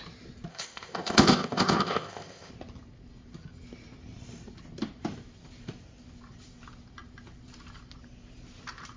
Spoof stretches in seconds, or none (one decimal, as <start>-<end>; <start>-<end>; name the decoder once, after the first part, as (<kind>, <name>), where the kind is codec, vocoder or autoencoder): 0.5-2.5 (codec, ZipCodec)